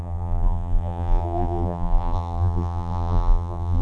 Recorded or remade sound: remade